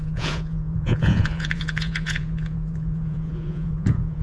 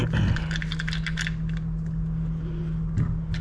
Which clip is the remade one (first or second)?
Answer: first